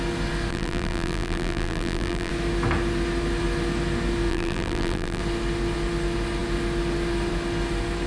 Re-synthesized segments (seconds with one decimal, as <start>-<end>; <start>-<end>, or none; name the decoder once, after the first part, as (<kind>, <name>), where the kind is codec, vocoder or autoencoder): 0.5-2.3 (vocoder, BigVGAN v2); 4.3-5.2

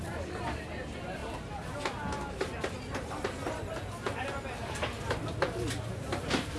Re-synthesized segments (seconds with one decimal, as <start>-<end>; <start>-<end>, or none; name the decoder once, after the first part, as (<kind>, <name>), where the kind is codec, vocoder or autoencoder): none